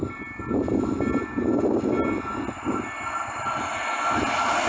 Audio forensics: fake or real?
real